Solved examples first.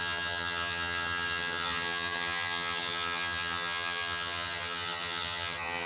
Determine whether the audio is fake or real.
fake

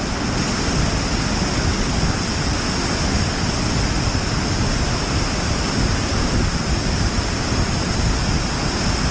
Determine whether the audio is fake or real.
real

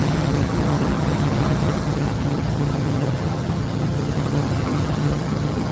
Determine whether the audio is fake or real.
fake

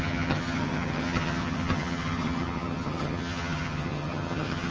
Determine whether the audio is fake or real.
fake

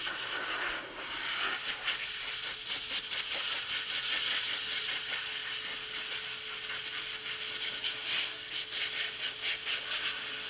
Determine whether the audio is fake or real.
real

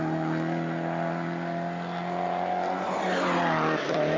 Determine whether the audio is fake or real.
real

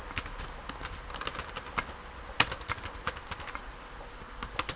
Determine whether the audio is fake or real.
real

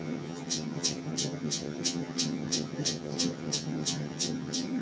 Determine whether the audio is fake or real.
fake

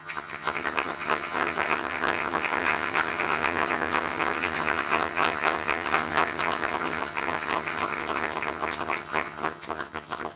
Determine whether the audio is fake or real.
fake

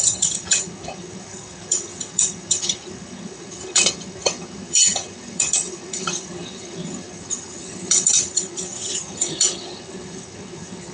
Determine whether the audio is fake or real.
fake